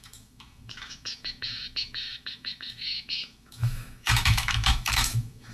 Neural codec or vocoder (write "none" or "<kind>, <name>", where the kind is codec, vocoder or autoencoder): autoencoder, DAC-VAE